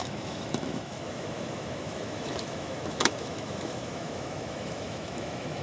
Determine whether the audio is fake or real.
fake